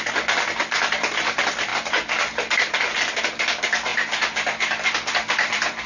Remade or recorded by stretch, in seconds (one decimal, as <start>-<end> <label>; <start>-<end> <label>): 0.0-1.7 remade; 1.7-3.0 recorded; 3.0-3.9 remade; 3.9-5.1 recorded; 5.1-5.9 remade